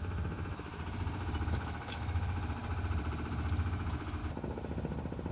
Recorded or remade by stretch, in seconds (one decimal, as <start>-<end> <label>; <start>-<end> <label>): 0.0-0.7 remade; 0.7-1.5 recorded; 1.5-2.6 remade; 2.6-3.3 recorded; 3.3-4.2 remade; 4.2-5.3 recorded